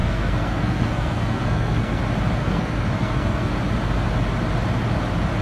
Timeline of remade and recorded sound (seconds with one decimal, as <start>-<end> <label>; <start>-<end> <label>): 0.0-2.0 remade; 2.0-2.4 recorded; 2.4-3.5 remade; 3.5-5.4 recorded